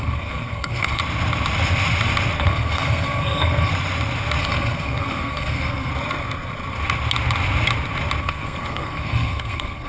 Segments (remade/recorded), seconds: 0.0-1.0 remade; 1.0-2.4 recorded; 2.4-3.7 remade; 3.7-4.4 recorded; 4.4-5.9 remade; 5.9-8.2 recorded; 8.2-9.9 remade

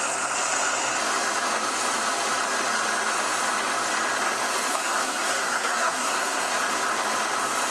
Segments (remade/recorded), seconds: 0.0-4.7 recorded; 4.7-6.5 remade; 6.5-7.7 recorded

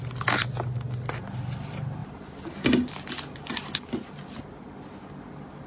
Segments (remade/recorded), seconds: 0.0-5.7 recorded

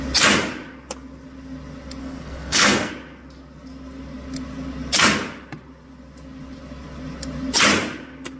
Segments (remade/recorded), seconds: 0.0-2.0 recorded; 2.0-2.9 remade; 2.9-8.4 recorded

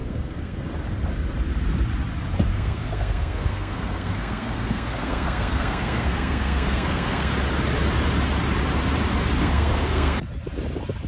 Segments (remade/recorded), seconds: 0.0-0.6 remade; 0.6-2.5 recorded; 2.5-7.3 remade; 7.3-9.4 recorded; 9.4-10.2 remade; 10.2-11.1 recorded